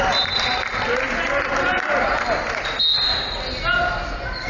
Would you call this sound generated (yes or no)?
no